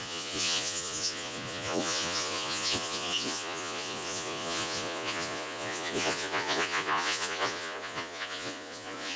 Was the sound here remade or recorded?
remade